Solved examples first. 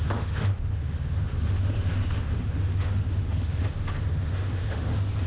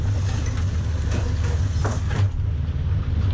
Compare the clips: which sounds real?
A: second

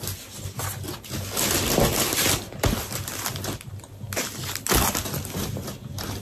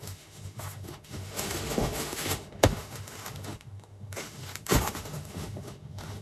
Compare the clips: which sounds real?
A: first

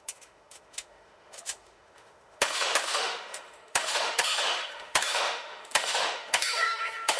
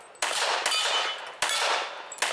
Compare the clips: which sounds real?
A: second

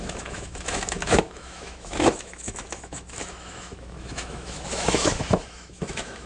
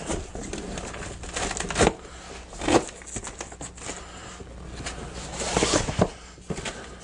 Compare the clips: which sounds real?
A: second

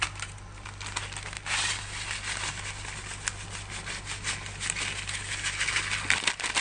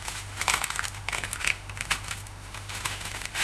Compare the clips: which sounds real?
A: first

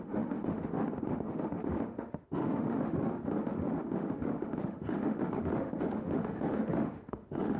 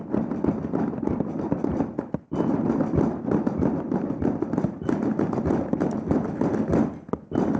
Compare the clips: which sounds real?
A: second